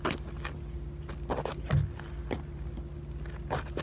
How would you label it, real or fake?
real